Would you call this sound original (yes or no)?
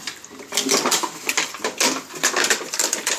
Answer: no